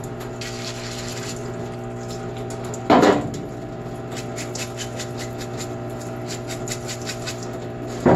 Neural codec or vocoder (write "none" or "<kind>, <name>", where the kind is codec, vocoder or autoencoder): none